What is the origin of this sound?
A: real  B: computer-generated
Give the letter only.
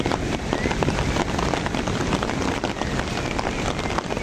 A